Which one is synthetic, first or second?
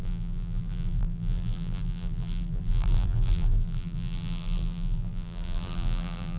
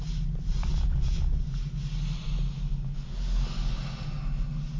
first